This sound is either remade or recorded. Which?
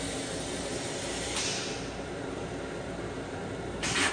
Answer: remade